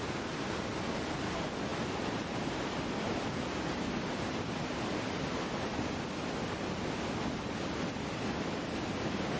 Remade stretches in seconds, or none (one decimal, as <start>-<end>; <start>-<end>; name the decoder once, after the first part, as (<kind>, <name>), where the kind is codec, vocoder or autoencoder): none